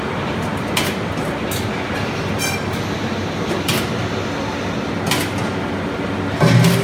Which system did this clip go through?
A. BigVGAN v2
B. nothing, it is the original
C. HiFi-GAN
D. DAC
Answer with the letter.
B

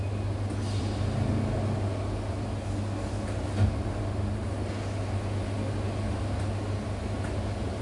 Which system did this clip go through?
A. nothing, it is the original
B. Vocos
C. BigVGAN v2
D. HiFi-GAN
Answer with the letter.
A